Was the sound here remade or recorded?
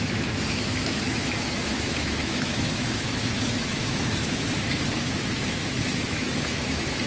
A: remade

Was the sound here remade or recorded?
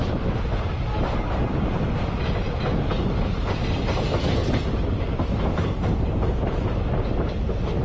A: recorded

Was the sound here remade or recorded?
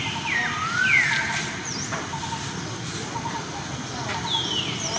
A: recorded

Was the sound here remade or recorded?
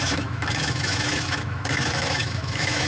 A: remade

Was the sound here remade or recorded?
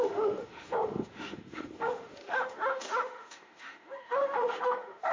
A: remade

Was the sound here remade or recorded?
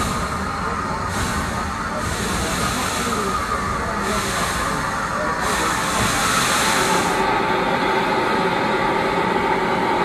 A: recorded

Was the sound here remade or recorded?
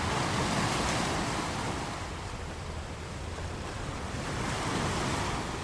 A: recorded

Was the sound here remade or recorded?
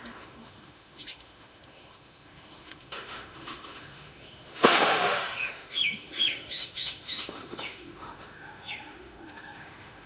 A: remade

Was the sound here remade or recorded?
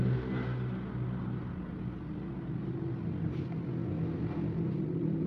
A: recorded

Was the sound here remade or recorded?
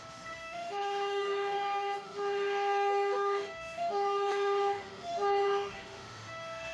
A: remade